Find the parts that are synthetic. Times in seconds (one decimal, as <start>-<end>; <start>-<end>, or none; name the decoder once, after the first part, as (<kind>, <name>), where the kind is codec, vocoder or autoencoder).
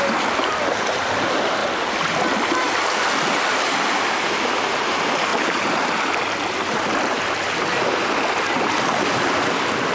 none